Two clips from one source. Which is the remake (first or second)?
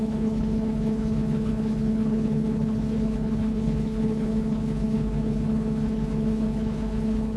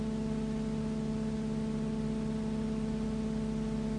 first